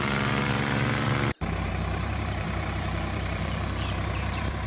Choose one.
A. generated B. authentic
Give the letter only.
A